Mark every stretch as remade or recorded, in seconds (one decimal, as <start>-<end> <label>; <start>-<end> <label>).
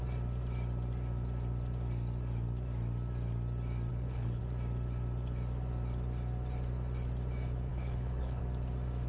0.0-3.9 recorded; 3.9-4.4 remade; 4.4-7.7 recorded; 7.7-8.4 remade; 8.4-9.1 recorded